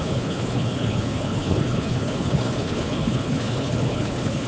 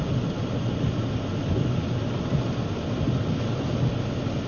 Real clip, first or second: second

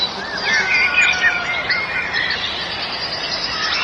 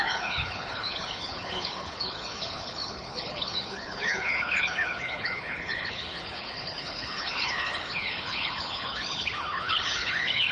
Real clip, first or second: first